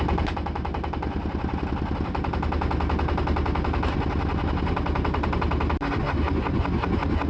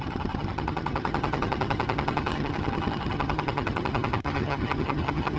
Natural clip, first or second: first